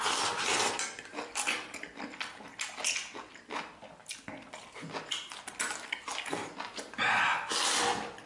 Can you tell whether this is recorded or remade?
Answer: recorded